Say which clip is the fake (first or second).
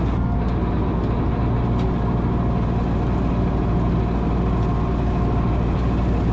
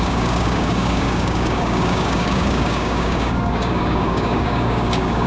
second